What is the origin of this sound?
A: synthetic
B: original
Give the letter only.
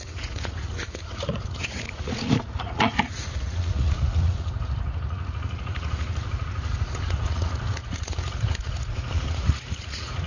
A